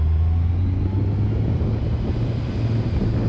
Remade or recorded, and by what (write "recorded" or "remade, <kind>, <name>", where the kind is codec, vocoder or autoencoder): recorded